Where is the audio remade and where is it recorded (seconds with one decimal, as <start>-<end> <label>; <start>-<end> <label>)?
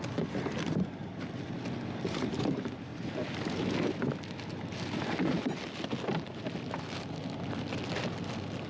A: 0.0-8.7 recorded